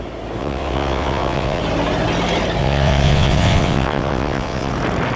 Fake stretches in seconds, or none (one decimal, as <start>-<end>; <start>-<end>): 0.4-1.6; 2.6-4.7